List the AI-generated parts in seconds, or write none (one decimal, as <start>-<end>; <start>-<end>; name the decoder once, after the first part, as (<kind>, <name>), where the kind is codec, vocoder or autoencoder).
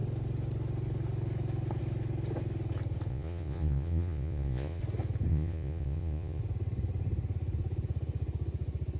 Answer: 3.1-4.8 (vocoder, Vocos); 5.3-6.4